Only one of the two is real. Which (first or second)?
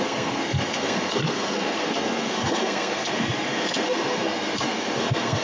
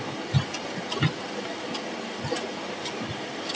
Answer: second